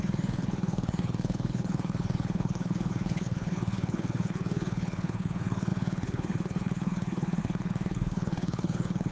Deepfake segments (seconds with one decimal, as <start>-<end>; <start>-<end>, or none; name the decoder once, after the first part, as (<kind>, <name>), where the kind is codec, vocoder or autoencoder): 0.0-9.1 (codec, HILCodec)